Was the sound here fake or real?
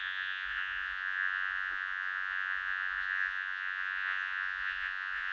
fake